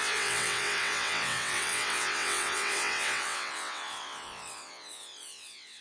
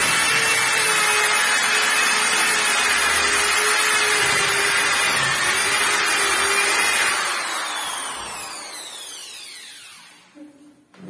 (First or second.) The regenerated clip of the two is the first